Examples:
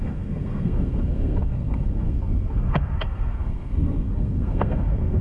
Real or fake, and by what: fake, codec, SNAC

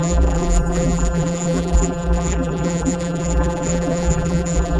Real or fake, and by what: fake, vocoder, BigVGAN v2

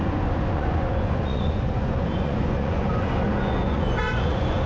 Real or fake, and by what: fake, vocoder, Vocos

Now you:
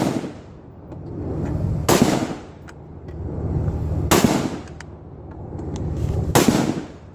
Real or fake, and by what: real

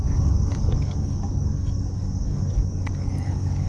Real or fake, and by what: fake, codec, DAC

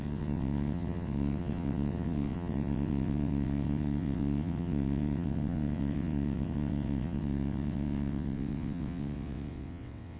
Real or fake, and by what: fake, vocoder, WaveNeXt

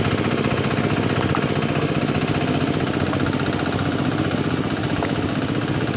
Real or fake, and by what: real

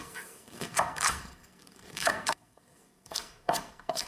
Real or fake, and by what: fake, codec, SNAC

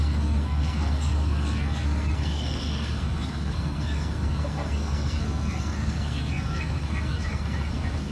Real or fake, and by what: fake, codec, SNAC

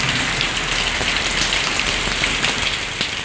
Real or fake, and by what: real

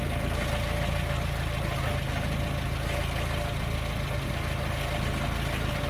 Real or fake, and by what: real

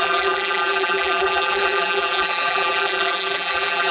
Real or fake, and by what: fake, vocoder, BigVGAN v2